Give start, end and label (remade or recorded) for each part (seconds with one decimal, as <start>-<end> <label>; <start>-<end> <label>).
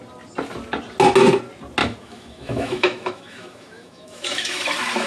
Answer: 0.0-1.8 recorded; 1.8-5.1 remade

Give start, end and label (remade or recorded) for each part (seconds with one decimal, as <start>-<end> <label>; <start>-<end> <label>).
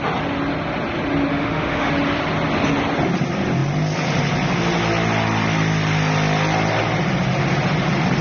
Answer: 0.0-1.3 recorded; 1.3-1.9 remade; 1.9-8.2 recorded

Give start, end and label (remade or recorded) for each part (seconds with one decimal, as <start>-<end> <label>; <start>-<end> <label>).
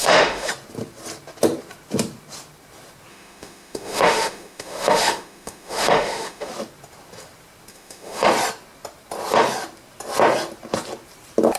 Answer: 0.0-0.5 remade; 0.5-3.1 recorded; 3.1-6.5 remade; 6.5-7.7 recorded; 7.7-8.3 remade; 8.3-11.6 recorded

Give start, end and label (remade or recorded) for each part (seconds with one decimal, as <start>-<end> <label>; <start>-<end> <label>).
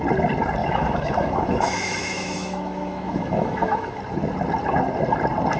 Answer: 0.0-0.6 recorded; 0.6-4.0 remade; 4.0-5.6 recorded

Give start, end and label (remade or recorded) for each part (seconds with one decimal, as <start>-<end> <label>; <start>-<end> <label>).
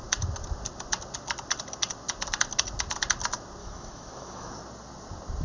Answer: 0.0-3.6 recorded; 3.6-4.5 remade; 4.5-5.4 recorded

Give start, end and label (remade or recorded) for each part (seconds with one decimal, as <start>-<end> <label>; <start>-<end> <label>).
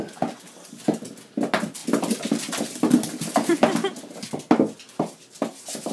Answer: 0.0-5.9 recorded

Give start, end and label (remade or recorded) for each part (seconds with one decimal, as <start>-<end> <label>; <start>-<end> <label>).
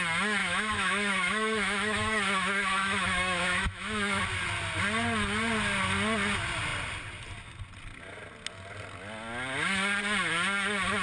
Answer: 0.0-0.4 recorded; 0.4-4.2 remade; 4.2-11.0 recorded